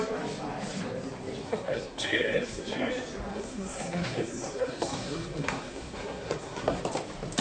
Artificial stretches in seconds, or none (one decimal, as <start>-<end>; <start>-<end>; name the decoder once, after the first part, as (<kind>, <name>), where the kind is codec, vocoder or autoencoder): 1.4-2.9 (codec, SNAC); 3.3-6.8